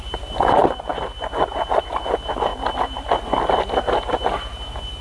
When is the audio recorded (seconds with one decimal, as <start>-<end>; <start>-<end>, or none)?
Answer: 0.0-5.0